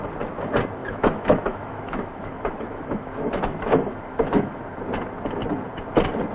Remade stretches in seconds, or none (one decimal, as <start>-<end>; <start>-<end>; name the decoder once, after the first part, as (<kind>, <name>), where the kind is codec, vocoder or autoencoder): 0.8-4.6 (autoencoder, DAC-VAE)

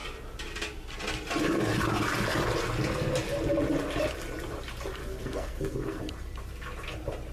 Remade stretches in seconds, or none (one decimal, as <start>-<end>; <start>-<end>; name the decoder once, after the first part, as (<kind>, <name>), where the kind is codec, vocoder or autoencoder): 5.0-6.0 (codec, SNAC)

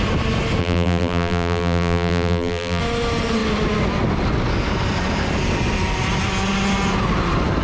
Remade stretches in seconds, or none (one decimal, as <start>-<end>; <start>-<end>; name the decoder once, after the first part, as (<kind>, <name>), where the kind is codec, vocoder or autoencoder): 0.6-2.8 (vocoder, BigVGAN v2)